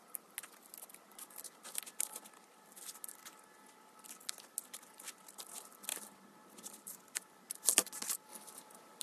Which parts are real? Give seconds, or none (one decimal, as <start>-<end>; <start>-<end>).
0.0-5.9; 7.0-8.3